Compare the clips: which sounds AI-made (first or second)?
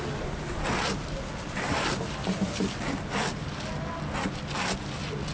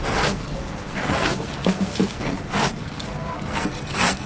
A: second